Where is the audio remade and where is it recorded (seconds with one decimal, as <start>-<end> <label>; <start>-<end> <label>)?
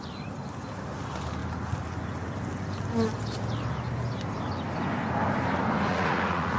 0.0-5.9 recorded; 5.9-6.6 remade